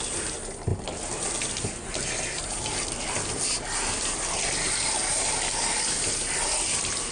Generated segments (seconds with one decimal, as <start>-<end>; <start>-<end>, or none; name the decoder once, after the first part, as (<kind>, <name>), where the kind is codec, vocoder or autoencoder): none